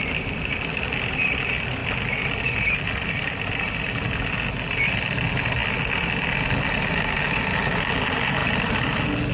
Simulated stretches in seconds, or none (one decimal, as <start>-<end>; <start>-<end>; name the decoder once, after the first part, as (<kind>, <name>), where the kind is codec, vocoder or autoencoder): none

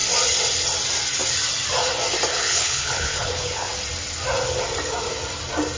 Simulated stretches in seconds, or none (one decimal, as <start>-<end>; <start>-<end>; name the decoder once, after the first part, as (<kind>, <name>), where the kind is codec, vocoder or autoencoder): 2.3-3.7 (codec, HILCodec)